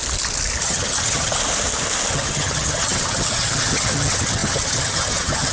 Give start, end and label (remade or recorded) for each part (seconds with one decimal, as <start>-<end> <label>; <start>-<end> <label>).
0.0-0.6 recorded; 0.6-1.4 remade; 1.4-2.1 recorded; 2.1-5.5 remade